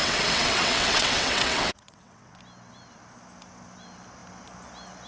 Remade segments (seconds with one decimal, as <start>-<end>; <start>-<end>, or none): 0.0-2.4